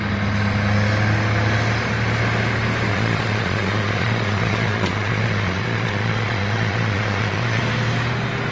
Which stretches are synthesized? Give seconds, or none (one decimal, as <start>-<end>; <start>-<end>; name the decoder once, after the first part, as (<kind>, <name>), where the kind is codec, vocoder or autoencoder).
2.9-7.6 (vocoder, Vocos)